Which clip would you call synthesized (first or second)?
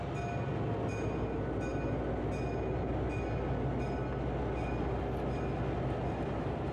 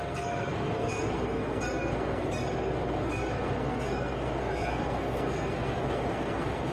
second